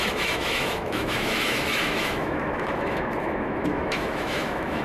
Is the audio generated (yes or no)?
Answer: yes